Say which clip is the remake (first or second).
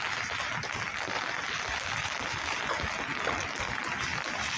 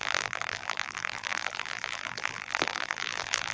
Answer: second